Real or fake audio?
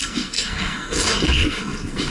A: fake